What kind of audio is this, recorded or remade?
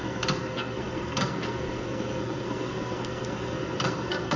remade